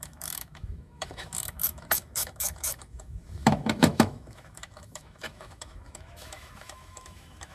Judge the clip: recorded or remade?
remade